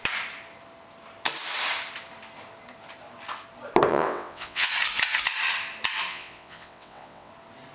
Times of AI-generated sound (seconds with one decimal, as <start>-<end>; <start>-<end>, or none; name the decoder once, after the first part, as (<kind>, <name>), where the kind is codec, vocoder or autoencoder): 3.9-4.7 (vocoder, WaveNeXt); 6.1-7.3